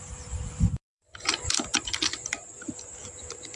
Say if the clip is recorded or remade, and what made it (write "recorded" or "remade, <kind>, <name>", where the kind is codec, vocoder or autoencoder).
remade, vocoder, BigVGAN v2